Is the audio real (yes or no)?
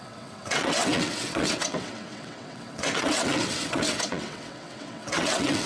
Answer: no